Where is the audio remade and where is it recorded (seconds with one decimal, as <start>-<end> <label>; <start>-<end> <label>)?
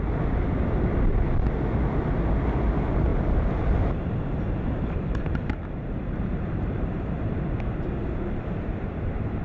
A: 0.0-3.1 recorded; 3.1-7.6 remade; 7.6-8.0 recorded; 8.0-9.4 remade